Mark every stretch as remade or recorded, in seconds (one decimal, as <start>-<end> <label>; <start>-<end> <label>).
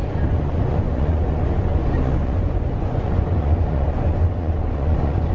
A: 0.0-5.3 remade